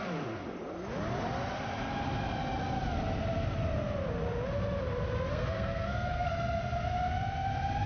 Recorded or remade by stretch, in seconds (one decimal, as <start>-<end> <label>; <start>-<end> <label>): 0.0-5.3 recorded; 5.3-6.6 remade; 6.6-7.9 recorded